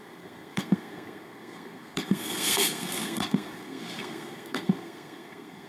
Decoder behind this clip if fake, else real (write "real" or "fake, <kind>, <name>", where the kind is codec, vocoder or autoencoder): fake, codec, SNAC